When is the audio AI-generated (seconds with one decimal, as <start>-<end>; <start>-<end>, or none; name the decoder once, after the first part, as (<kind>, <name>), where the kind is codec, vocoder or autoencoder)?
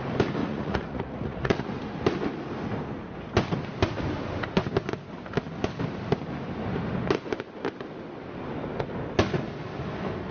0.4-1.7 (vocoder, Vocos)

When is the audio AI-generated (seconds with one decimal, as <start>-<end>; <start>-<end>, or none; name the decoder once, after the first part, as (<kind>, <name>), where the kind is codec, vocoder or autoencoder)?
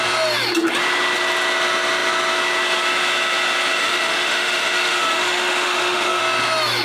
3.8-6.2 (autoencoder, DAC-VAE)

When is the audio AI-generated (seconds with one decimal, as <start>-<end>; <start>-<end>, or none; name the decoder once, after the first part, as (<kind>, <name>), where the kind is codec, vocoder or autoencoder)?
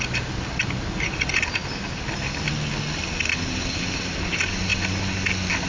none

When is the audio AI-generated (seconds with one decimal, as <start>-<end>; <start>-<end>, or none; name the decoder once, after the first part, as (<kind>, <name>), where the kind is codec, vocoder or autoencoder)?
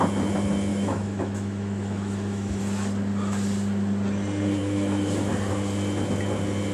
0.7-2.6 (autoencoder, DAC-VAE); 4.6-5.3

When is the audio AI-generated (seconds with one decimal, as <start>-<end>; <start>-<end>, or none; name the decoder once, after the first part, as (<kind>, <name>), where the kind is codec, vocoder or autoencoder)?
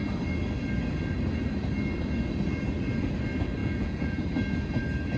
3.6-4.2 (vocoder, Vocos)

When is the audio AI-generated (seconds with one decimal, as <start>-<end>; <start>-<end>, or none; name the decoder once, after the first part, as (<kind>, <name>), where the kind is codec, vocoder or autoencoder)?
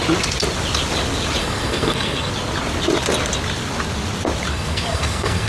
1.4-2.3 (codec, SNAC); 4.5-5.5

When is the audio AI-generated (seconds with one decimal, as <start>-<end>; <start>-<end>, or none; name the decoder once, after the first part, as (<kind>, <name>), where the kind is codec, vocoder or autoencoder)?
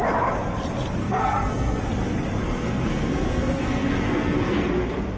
1.0-1.8 (codec, SNAC); 2.4-4.7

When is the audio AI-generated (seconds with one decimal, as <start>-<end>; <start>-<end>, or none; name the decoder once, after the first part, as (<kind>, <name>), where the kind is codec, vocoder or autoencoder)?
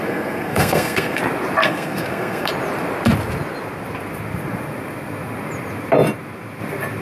0.0-1.2 (codec, SNAC); 1.6-2.5